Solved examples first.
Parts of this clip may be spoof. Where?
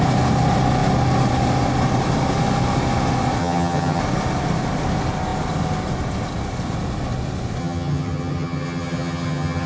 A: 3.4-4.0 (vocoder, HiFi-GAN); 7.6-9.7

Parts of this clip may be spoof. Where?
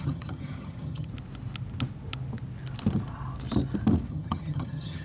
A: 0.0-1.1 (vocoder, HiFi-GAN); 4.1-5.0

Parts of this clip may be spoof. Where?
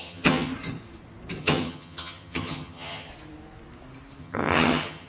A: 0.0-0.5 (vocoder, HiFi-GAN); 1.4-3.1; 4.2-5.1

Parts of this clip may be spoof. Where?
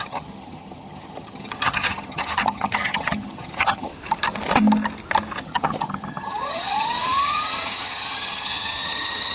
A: 0.0-3.9 (vocoder, HiFi-GAN); 5.4-9.3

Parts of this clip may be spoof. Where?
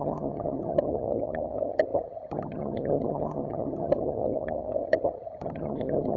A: 0.0-6.2 (vocoder, HiFi-GAN)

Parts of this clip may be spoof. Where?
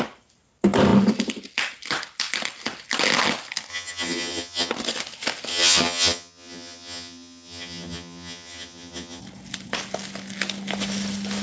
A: 3.7-4.7 (vocoder, HiFi-GAN); 5.5-9.2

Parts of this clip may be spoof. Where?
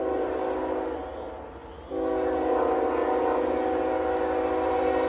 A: none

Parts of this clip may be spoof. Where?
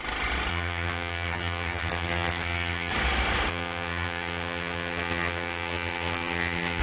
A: 0.5-2.9 (vocoder, HiFi-GAN); 3.5-6.8